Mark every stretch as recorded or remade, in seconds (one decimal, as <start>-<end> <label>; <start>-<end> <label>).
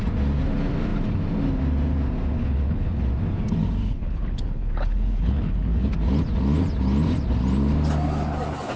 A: 0.0-2.4 recorded; 2.4-3.0 remade; 3.0-3.8 recorded; 3.8-5.9 remade; 5.9-8.8 recorded